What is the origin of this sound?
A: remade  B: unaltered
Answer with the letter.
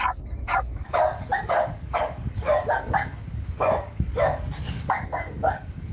A